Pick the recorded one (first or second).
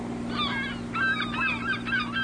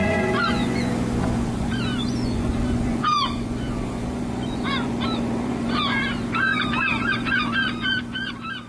first